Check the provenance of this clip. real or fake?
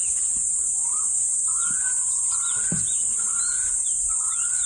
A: real